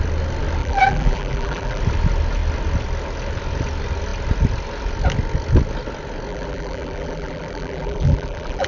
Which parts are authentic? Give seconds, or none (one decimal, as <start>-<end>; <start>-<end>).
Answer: 0.0-0.6; 1.8-6.3